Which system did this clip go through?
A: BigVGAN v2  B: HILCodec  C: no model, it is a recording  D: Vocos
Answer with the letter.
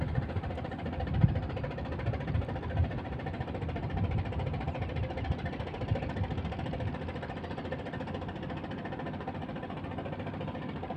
C